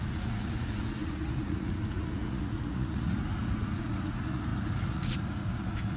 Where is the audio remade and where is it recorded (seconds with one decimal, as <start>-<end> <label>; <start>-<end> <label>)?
0.0-6.0 remade